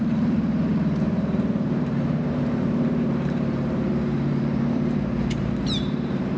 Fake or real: fake